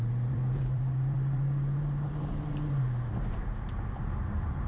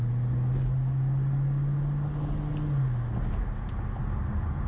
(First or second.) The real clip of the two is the second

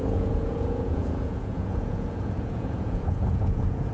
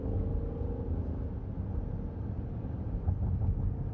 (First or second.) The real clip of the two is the second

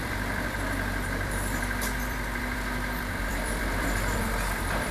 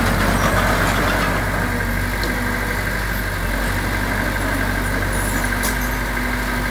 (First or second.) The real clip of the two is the second